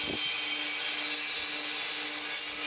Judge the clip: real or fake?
real